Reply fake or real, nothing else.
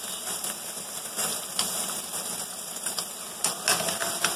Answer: real